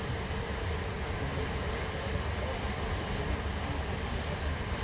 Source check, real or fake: real